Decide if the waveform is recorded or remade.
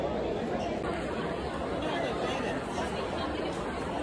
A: remade